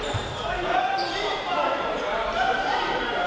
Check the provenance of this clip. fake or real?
fake